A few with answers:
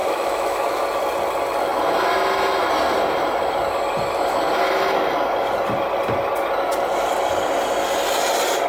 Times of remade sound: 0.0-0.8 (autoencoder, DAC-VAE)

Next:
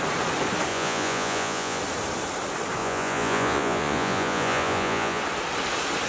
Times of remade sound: 0.7-1.8 (vocoder, Vocos); 2.8-5.2

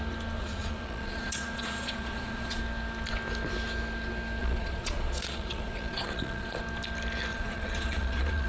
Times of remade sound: 0.4-2.6 (vocoder, Vocos); 4.4-6.6; 7.3-8.5

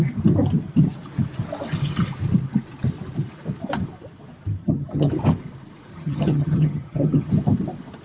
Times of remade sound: 4.6-5.1 (vocoder, HiFi-GAN); 5.9-7.3

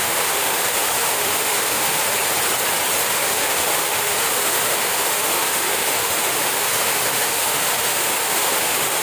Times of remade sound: 0.0-2.0 (autoencoder, DAC-VAE); 3.0-9.0